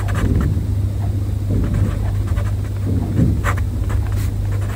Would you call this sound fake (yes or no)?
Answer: no